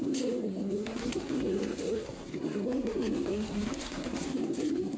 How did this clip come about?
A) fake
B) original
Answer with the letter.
A